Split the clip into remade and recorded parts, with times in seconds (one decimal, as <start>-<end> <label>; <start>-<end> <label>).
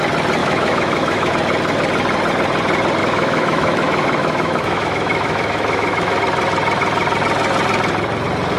0.0-0.4 recorded; 0.4-1.3 remade; 1.3-3.0 recorded; 3.0-6.2 remade; 6.2-8.6 recorded